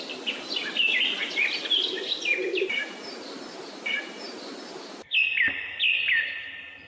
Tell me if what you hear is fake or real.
real